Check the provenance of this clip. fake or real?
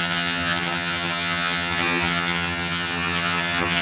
fake